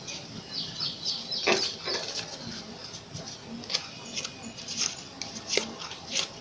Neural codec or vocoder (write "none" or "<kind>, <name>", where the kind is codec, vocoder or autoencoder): none